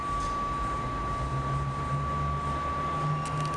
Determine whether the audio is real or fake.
real